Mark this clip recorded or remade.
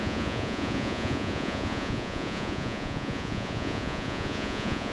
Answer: remade